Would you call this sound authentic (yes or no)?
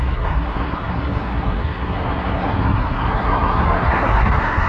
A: no